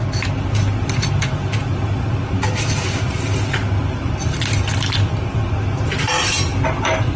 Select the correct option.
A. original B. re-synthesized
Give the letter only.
A